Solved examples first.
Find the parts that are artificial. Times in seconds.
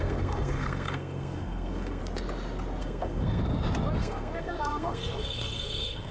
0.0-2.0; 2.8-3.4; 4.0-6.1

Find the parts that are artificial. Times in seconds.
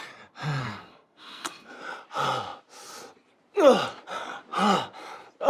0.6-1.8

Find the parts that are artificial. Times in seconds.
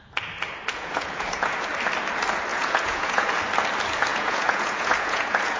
0.7-1.7; 2.5-3.4; 4.1-5.6